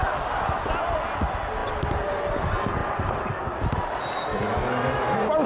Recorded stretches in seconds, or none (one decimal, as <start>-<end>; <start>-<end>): 0.6-5.5